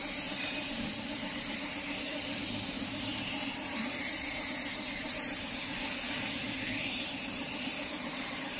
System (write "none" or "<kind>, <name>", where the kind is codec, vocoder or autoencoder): vocoder, BigVGAN v2